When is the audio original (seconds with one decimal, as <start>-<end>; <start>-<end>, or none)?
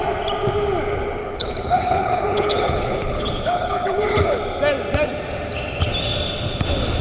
0.0-1.2; 4.4-7.0